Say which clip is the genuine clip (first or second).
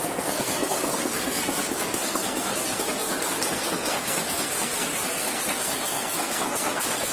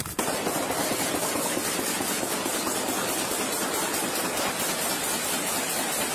second